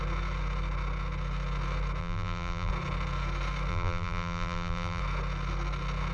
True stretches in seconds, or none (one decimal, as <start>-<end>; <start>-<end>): 0.0-2.0; 2.7-3.7; 5.0-6.1